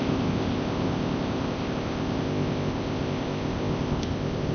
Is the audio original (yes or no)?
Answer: no